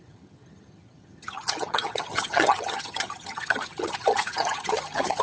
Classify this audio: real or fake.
fake